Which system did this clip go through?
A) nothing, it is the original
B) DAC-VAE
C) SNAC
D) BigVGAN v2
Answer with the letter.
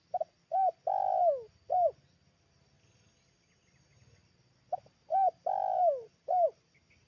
A